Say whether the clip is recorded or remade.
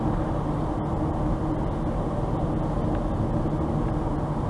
recorded